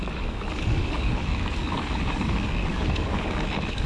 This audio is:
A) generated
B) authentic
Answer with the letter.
A